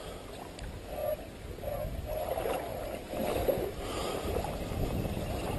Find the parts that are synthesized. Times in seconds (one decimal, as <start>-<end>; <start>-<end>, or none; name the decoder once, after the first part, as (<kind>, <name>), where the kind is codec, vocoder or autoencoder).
2.7-4.4 (vocoder, BigVGAN v2)